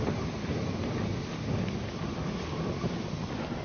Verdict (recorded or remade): recorded